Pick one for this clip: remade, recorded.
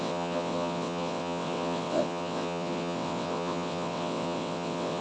remade